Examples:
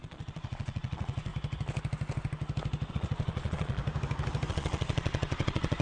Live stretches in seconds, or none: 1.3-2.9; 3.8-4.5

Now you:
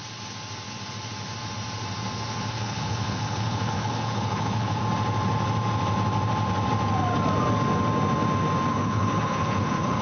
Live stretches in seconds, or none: 0.0-2.5; 4.8-8.7